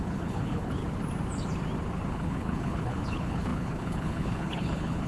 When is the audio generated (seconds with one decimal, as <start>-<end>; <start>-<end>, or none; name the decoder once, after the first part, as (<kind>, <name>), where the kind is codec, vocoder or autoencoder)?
0.0-0.8 (codec, HILCodec); 2.1-5.1